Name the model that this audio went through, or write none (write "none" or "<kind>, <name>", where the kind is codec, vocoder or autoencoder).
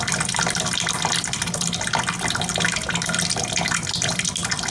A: none